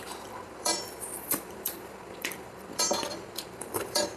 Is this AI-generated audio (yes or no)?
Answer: yes